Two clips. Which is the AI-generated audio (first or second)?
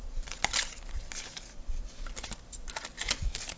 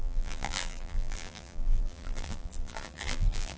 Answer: second